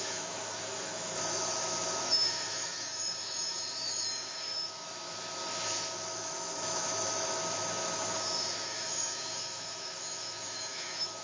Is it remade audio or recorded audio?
remade